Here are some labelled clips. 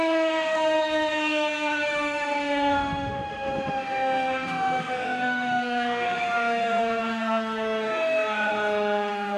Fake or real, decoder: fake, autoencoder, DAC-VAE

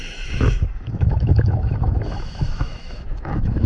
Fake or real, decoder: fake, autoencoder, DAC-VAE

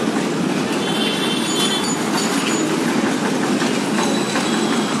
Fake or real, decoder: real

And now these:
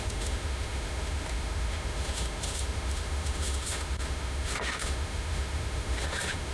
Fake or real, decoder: fake, autoencoder, DAC-VAE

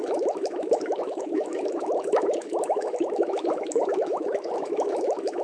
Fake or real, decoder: fake, autoencoder, DAC-VAE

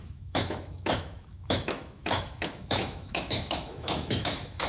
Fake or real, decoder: fake, autoencoder, DAC-VAE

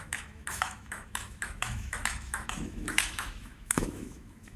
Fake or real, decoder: fake, autoencoder, DAC-VAE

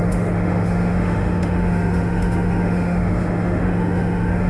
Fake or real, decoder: fake, autoencoder, DAC-VAE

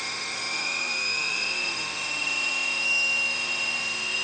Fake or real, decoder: fake, autoencoder, DAC-VAE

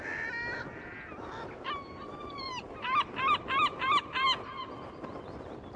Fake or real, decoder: real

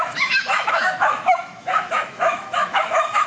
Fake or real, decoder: fake, autoencoder, DAC-VAE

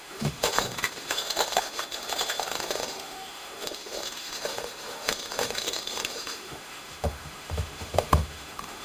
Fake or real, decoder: fake, autoencoder, DAC-VAE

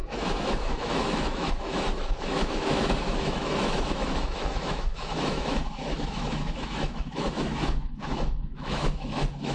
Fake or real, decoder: fake, autoencoder, DAC-VAE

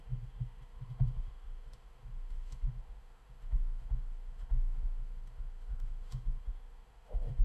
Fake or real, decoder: fake, autoencoder, DAC-VAE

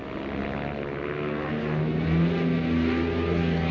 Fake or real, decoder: real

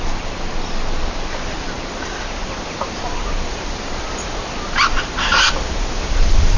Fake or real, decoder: real